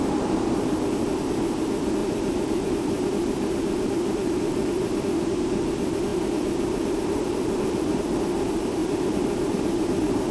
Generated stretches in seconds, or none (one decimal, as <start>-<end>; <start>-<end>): 2.0-5.5; 6.1-8.0; 8.8-10.3